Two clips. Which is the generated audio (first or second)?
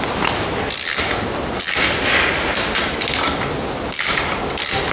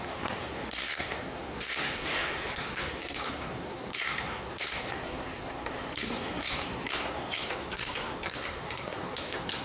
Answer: second